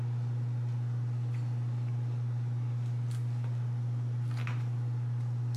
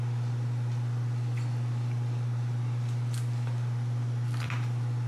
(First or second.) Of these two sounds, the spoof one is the second